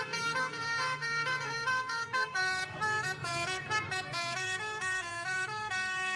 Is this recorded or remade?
remade